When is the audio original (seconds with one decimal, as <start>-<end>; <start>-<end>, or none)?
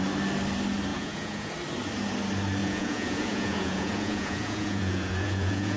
0.0-0.9; 1.5-2.6